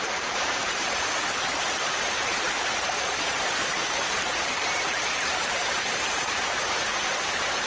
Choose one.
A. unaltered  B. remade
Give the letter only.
B